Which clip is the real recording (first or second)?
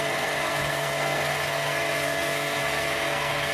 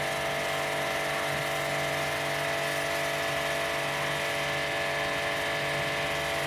second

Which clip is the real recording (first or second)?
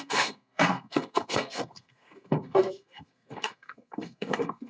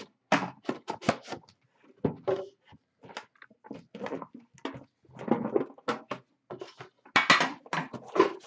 second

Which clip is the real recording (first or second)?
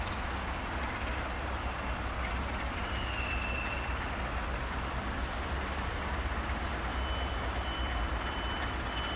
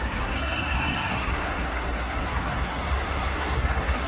first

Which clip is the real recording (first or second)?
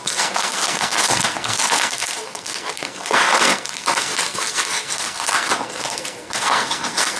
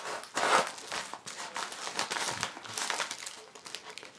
second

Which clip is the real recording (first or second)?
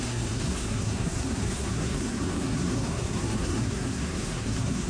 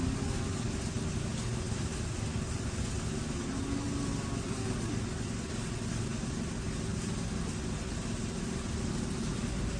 second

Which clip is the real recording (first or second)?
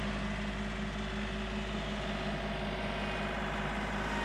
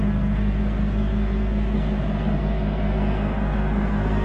first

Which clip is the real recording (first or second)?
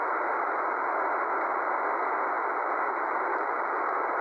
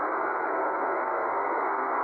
first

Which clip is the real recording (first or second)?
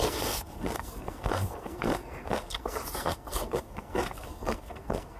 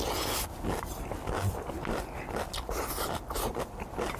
second